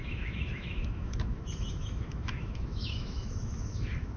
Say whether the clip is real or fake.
fake